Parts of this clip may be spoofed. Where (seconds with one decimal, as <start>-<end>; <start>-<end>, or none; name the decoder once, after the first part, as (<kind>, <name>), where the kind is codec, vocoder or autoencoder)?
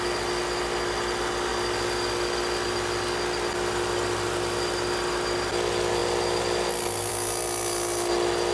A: none